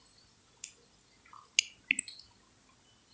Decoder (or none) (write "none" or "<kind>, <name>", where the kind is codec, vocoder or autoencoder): none